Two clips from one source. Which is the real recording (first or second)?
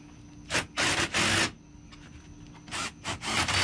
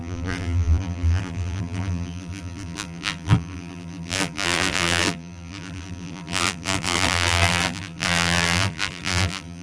first